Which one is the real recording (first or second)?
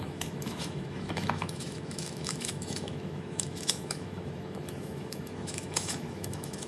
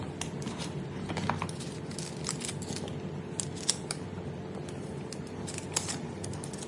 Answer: second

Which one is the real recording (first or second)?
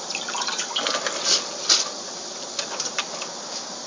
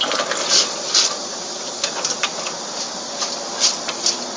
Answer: second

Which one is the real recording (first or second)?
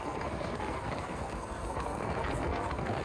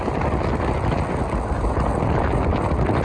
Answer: second